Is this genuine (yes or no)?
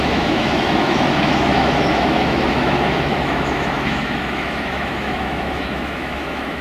no